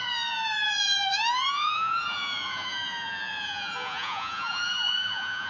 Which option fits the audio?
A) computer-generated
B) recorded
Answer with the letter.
A